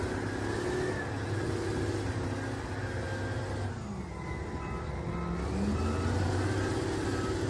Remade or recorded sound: recorded